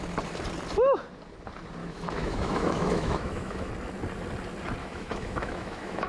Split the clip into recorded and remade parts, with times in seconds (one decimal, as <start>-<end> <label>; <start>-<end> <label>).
0.0-1.8 recorded; 1.8-3.7 remade; 3.7-4.8 recorded; 4.8-6.1 remade